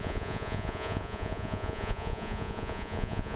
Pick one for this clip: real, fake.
fake